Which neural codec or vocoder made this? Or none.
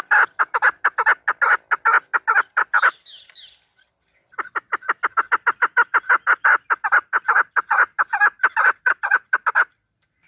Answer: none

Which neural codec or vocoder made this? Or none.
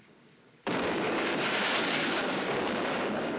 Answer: codec, DAC